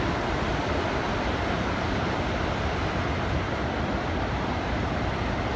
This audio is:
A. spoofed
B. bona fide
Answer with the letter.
B